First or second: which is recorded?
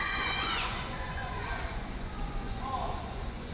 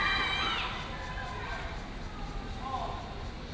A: second